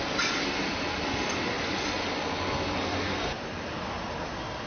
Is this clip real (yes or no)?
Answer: yes